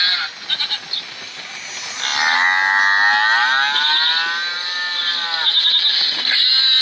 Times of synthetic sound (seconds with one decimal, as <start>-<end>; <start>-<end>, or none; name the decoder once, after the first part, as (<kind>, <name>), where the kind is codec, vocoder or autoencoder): none